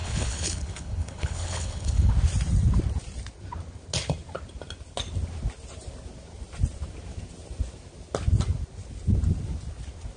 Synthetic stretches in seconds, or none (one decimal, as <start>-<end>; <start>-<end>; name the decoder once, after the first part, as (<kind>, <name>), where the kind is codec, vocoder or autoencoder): 0.0-2.1 (codec, HILCodec)